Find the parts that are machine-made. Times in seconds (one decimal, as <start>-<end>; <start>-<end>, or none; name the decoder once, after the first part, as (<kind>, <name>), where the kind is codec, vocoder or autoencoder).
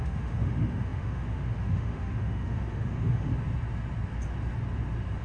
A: 0.0-3.3 (autoencoder, DAC-VAE)